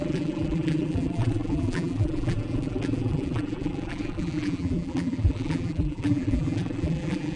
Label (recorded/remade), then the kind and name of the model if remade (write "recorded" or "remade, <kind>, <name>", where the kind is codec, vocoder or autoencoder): remade, vocoder, BigVGAN v2